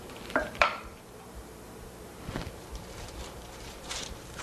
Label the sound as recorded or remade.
remade